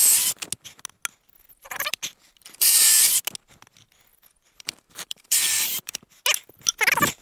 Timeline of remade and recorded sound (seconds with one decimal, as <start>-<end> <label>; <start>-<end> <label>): 0.0-1.6 recorded; 1.6-3.2 remade; 3.2-4.1 recorded; 4.1-6.0 remade; 6.0-7.2 recorded